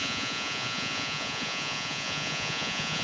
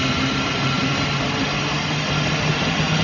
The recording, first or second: second